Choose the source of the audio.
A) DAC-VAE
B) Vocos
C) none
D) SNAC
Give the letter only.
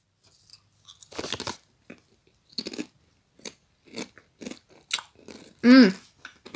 C